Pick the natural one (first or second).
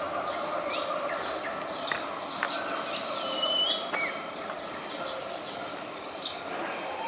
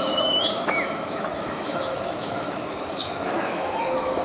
first